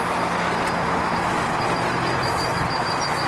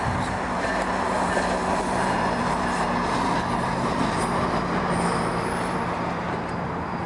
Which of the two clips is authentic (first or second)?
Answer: first